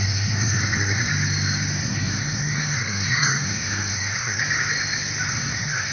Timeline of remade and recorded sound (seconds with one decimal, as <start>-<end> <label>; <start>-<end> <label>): 0.0-1.1 remade; 1.1-1.8 recorded; 1.8-4.4 remade; 4.4-5.3 recorded; 5.3-5.9 remade